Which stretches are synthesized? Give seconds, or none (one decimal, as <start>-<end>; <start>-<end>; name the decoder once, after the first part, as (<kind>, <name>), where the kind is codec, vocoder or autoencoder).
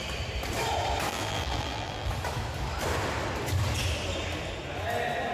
1.1-2.1 (vocoder, BigVGAN v2)